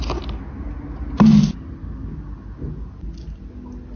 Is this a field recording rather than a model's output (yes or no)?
yes